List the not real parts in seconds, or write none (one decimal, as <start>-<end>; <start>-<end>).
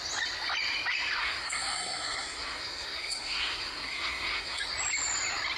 1.2-4.6